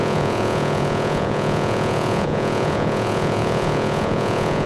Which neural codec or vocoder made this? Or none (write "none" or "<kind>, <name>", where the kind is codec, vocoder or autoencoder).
vocoder, Vocos